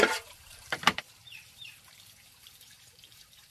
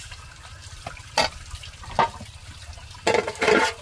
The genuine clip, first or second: second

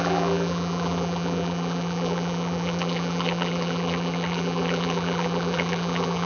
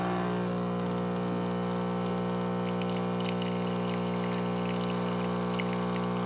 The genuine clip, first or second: second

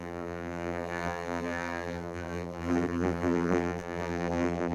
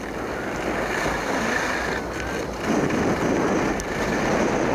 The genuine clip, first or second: second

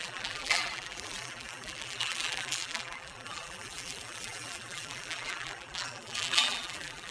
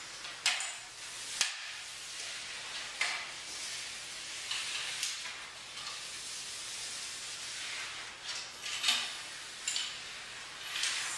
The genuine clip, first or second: second